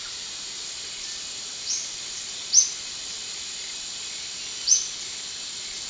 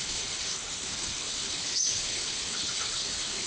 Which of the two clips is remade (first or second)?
second